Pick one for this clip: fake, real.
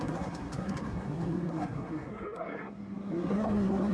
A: fake